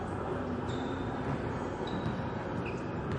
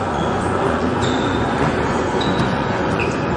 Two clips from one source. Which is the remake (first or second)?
second